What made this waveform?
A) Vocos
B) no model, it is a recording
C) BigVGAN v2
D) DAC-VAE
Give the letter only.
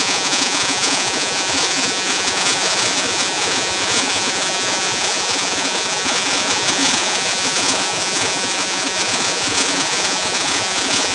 A